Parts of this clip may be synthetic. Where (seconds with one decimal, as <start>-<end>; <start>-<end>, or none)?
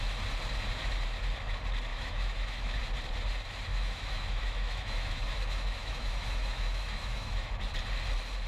1.9-2.8; 3.7-7.5